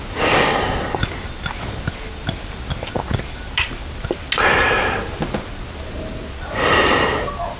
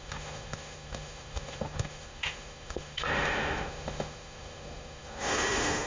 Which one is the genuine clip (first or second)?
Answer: first